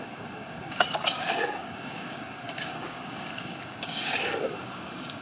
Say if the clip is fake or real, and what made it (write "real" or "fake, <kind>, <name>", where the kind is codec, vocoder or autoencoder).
fake, codec, DAC